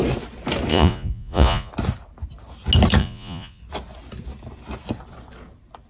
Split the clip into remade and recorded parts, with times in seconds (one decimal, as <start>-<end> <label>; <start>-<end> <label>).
0.0-0.7 recorded; 0.7-1.7 remade; 1.7-3.0 recorded; 3.0-3.6 remade; 3.6-5.9 recorded